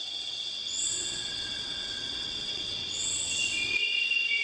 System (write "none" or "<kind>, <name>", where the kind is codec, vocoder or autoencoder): vocoder, WaveNeXt